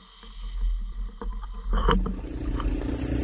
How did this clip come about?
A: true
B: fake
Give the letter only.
A